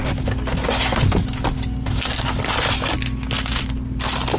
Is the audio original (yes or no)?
yes